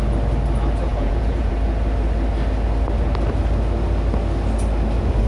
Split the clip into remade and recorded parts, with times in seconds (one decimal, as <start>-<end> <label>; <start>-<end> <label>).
0.0-0.9 recorded; 0.9-1.5 remade; 1.5-5.3 recorded